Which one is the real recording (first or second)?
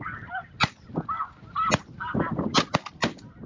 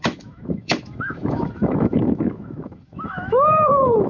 first